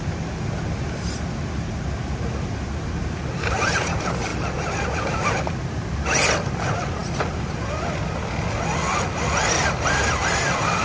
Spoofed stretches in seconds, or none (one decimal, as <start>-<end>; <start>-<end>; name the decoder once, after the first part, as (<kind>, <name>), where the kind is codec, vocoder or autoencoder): none